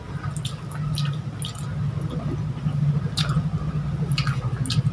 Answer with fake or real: real